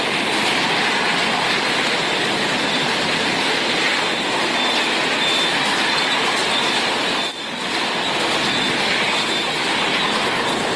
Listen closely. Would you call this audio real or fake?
real